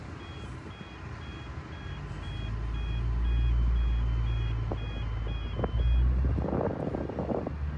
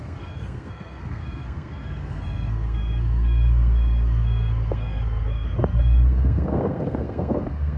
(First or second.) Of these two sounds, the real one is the first